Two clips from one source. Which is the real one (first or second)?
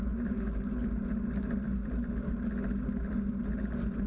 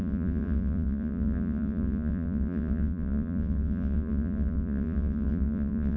first